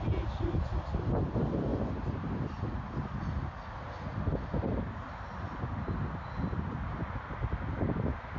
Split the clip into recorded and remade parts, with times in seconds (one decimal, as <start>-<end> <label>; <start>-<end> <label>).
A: 0.0-8.4 recorded